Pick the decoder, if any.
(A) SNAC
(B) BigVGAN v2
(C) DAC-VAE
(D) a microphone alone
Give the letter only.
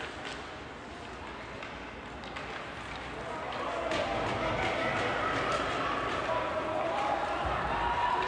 D